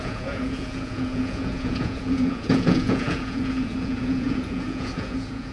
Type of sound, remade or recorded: remade